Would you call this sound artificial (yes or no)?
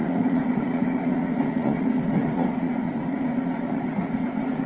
yes